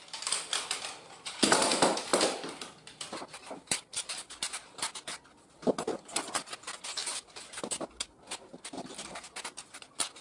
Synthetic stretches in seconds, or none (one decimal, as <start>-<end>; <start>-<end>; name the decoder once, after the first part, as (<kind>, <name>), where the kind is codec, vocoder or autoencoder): 2.1-4.5 (vocoder, BigVGAN v2)